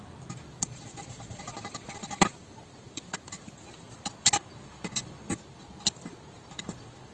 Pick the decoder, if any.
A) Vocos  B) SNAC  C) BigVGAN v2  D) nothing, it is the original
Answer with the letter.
C